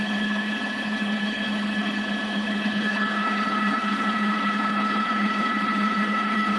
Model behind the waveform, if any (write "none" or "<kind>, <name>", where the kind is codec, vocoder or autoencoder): codec, HILCodec